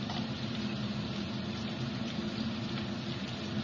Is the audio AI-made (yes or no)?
no